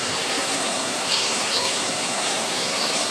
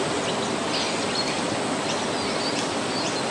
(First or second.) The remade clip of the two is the first